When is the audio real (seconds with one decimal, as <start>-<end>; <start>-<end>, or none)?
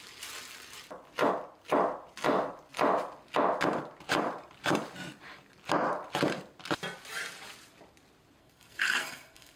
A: 0.0-8.4